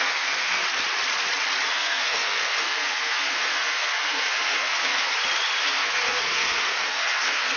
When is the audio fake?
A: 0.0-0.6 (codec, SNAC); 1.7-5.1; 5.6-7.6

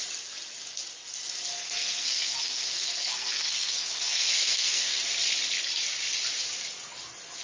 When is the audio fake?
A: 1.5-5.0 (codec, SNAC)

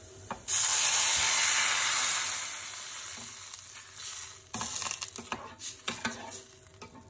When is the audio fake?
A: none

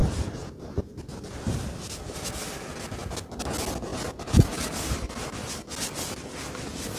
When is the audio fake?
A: 3.9-5.1 (vocoder, BigVGAN v2)

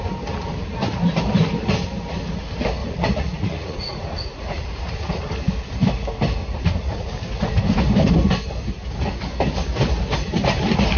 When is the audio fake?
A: 2.8-5.2 (vocoder, Vocos); 6.4-7.1

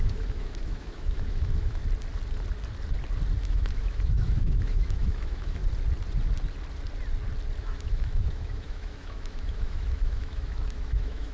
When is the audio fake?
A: 0.0-1.8 (autoencoder, DAC-VAE); 3.4-5.6; 7.6-11.3

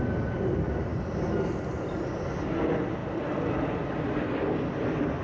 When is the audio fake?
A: none